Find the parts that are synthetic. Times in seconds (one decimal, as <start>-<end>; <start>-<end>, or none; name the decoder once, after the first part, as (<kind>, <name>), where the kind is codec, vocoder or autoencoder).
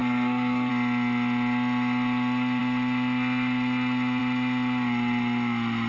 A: 0.0-0.7 (codec, SNAC)